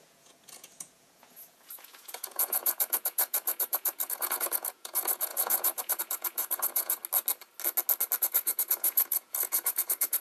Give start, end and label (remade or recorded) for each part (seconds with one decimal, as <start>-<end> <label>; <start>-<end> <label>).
0.0-7.0 remade; 7.0-8.2 recorded; 8.2-10.2 remade